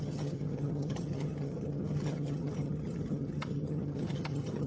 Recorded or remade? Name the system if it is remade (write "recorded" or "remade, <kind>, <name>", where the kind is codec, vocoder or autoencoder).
remade, vocoder, HiFi-GAN